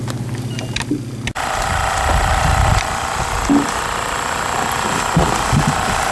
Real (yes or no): yes